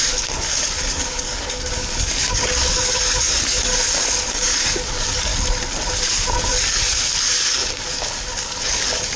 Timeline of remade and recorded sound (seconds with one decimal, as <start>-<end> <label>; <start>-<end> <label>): 0.0-3.7 remade; 3.7-4.3 recorded; 4.3-5.3 remade; 5.3-6.4 recorded; 6.4-9.2 remade